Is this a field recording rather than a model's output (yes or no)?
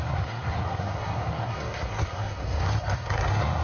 no